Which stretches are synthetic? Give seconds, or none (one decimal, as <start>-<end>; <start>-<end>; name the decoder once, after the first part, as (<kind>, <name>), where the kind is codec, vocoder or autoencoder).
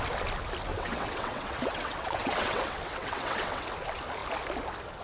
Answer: 0.7-3.7 (vocoder, WaveNeXt)